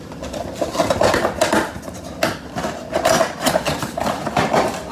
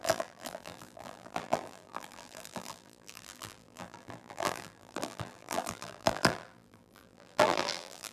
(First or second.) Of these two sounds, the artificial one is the second